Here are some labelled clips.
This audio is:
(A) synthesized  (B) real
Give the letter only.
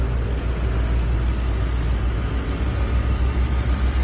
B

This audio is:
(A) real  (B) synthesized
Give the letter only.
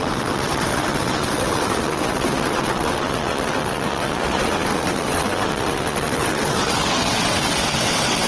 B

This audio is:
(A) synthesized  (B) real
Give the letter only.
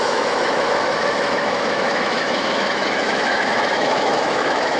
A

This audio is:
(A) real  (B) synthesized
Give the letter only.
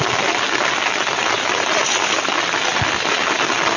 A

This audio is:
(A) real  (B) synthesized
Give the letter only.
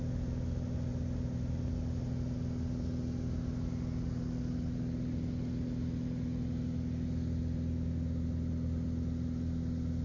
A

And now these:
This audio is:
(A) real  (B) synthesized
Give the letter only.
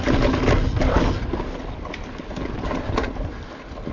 A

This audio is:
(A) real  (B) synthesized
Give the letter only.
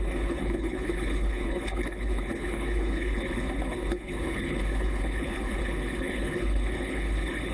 B